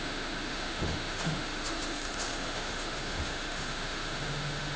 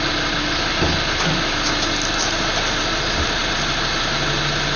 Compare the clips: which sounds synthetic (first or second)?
first